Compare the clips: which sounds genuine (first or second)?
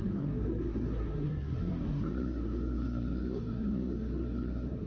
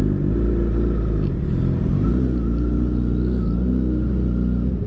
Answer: second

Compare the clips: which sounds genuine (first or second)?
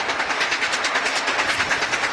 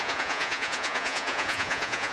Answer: first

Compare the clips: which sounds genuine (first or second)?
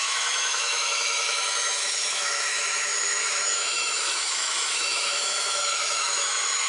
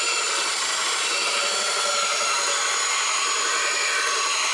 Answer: second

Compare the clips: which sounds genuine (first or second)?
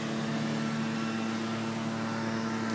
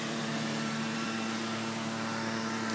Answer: first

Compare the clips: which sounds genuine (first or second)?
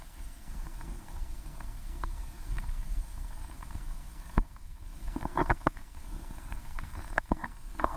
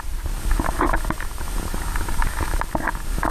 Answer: second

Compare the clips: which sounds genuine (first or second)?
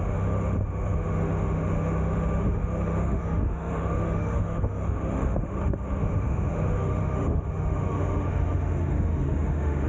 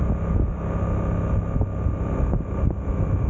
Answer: second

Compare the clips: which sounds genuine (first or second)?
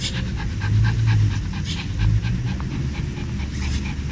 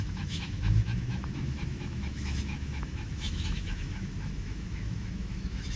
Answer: first